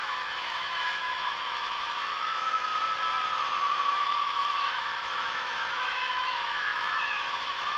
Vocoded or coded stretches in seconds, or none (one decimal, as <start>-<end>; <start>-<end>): 0.0-2.7; 3.6-7.8